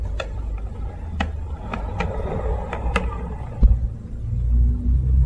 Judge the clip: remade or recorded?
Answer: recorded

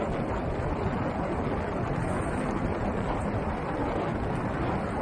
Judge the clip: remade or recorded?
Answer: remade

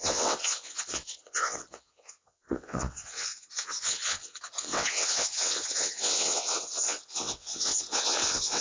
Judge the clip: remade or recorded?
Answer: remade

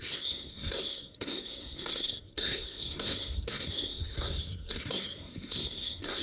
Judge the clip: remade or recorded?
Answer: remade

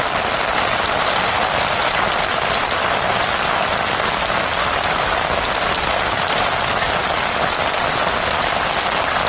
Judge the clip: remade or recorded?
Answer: recorded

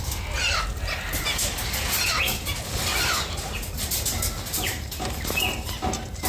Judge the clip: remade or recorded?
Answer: recorded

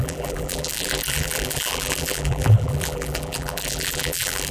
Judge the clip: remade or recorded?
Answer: remade